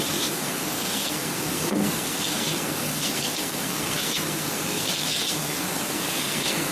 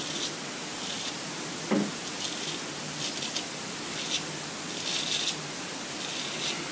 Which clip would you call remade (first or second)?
first